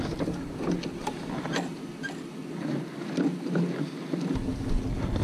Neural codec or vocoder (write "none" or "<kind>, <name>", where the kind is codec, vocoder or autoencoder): none